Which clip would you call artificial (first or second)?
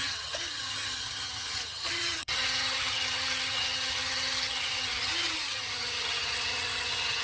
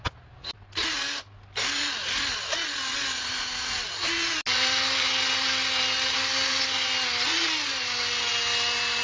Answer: first